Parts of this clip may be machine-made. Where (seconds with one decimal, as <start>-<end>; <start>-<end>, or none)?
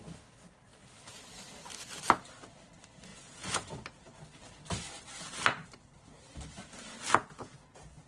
3.1-3.7; 7.2-8.1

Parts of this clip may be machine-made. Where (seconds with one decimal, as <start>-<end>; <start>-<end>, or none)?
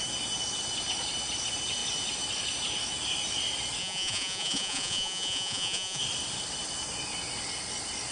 3.8-6.0